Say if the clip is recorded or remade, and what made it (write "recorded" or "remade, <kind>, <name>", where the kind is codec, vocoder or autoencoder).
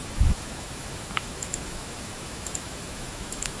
remade, autoencoder, DAC-VAE